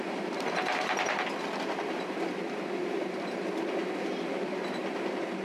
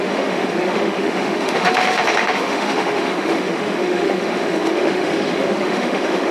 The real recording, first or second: first